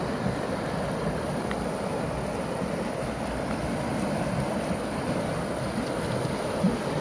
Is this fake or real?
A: real